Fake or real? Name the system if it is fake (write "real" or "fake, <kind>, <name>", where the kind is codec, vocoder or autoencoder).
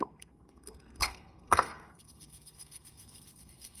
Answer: fake, codec, SNAC